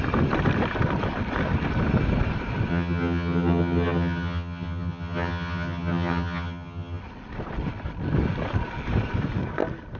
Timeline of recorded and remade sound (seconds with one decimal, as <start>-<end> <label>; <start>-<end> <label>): 0.0-2.7 recorded; 2.7-7.0 remade; 7.0-10.0 recorded

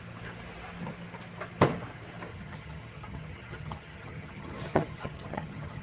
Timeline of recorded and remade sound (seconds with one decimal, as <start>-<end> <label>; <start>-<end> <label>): 0.0-2.3 recorded; 2.3-5.8 remade